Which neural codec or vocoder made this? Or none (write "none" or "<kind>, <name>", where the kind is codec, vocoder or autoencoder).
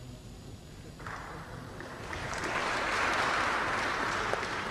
none